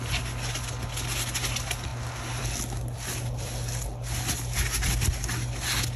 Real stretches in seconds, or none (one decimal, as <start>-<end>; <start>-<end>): 0.0-6.0